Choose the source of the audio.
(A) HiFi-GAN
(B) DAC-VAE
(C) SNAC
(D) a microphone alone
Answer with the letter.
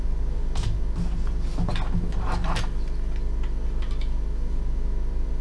D